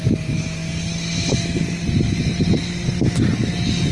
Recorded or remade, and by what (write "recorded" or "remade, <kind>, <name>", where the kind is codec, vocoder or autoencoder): recorded